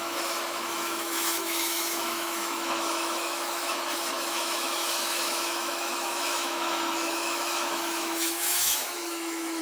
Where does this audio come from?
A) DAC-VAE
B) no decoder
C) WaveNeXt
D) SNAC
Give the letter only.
A